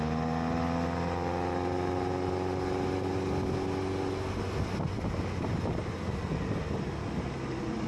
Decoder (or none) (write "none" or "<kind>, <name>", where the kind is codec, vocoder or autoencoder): none